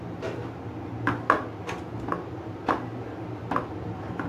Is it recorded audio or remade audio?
recorded